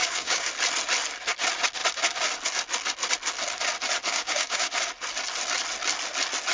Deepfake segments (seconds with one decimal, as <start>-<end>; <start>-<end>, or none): 0.0-0.5; 4.1-4.7